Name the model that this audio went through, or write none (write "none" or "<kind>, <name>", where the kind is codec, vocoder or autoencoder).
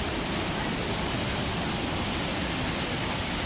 vocoder, BigVGAN v2